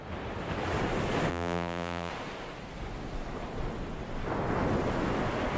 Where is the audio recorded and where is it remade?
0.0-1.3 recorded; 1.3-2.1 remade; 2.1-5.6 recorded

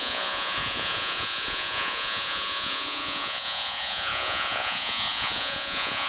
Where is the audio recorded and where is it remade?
0.0-6.1 remade

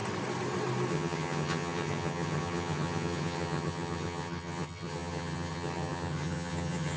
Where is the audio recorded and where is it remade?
0.0-0.9 recorded; 0.9-7.0 remade

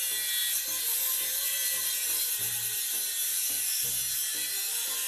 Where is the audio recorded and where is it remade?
0.0-3.3 recorded; 3.3-3.9 remade; 3.9-5.1 recorded